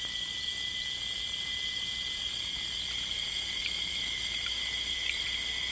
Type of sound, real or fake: fake